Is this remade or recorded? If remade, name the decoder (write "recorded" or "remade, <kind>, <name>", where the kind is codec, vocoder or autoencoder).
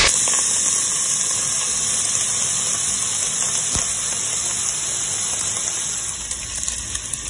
recorded